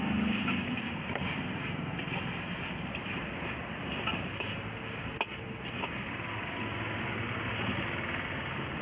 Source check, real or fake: real